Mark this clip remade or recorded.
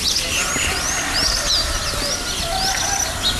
recorded